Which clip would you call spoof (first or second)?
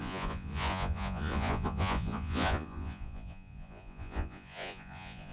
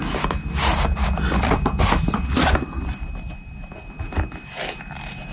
first